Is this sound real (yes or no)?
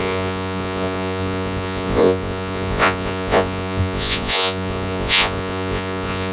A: no